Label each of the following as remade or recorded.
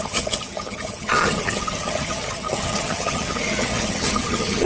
remade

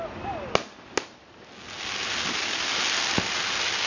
recorded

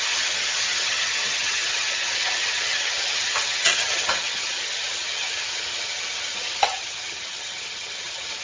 remade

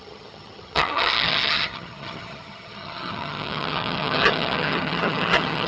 remade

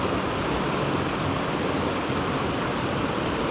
recorded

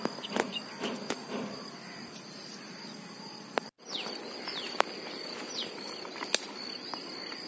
recorded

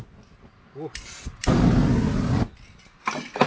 recorded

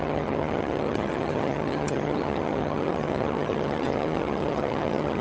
remade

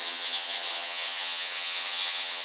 remade